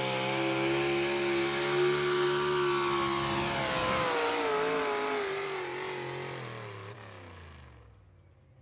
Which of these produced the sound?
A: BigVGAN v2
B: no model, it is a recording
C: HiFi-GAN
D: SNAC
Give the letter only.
B